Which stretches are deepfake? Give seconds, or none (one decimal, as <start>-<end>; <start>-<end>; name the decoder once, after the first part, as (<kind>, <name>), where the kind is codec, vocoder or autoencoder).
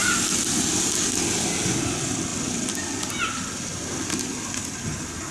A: none